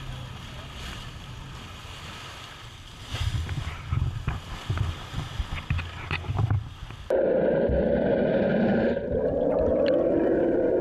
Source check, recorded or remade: recorded